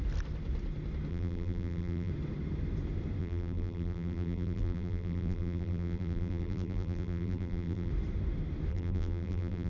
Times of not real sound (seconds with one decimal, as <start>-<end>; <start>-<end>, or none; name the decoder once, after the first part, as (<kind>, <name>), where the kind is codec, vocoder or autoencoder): 1.1-2.1 (vocoder, BigVGAN v2); 3.2-7.9; 8.7-9.7